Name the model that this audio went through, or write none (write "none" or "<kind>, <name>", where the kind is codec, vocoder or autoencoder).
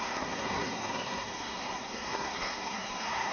codec, SNAC